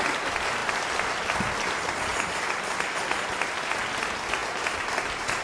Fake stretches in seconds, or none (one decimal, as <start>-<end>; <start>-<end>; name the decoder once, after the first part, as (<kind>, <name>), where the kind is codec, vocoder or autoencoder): 0.6-1.6 (vocoder, BigVGAN v2); 2.1-3.7